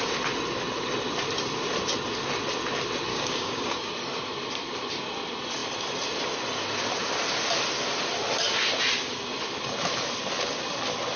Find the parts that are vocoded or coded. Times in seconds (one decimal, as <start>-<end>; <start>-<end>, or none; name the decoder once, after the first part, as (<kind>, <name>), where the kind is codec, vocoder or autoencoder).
3.1-3.9 (codec, DAC)